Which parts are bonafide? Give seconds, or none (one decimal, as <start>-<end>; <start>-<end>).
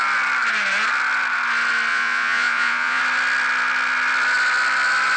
0.0-1.9; 3.0-5.2